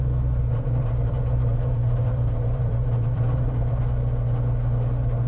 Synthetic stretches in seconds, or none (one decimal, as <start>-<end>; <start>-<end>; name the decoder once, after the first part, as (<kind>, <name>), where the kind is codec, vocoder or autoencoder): 0.5-3.7 (vocoder, BigVGAN v2)